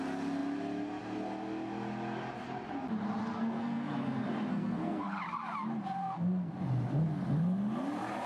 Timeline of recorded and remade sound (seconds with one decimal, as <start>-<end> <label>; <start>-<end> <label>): 0.0-3.3 recorded; 3.3-3.9 remade; 3.9-4.5 recorded; 4.5-5.2 remade; 5.2-6.0 recorded; 6.0-6.5 remade; 6.5-8.3 recorded